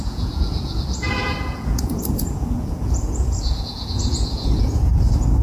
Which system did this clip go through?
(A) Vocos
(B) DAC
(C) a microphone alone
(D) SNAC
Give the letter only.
A